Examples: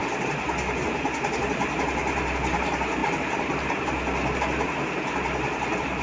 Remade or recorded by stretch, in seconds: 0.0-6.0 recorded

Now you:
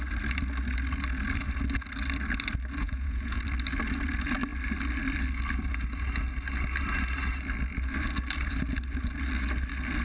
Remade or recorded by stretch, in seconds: 0.0-2.8 recorded; 2.8-3.4 remade; 3.4-10.0 recorded

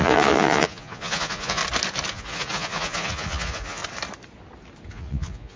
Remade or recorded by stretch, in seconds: 0.0-1.6 remade; 1.6-2.1 recorded; 2.1-3.8 remade; 3.8-4.9 recorded; 4.9-5.6 remade

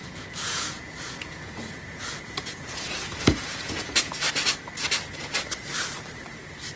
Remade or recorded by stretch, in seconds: 0.0-4.1 remade; 4.1-6.8 recorded

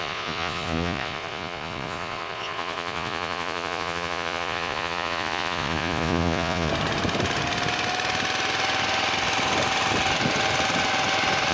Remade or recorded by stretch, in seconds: 0.0-6.7 remade; 6.7-11.5 recorded